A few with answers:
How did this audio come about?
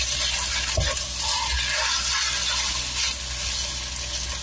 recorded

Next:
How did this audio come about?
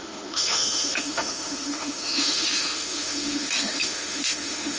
remade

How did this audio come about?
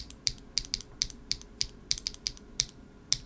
recorded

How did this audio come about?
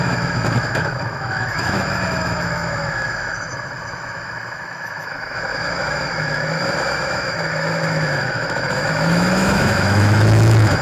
remade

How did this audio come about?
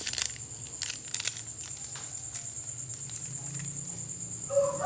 recorded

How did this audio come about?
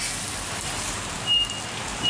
recorded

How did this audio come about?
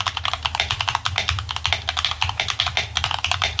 recorded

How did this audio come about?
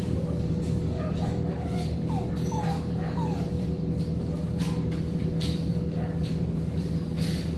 remade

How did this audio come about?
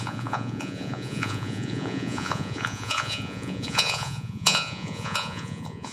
remade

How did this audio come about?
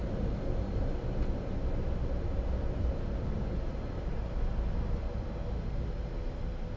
recorded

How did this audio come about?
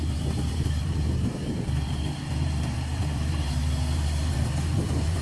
remade